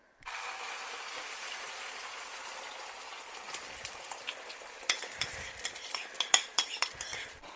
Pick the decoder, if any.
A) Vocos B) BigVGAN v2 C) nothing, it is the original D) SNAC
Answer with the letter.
B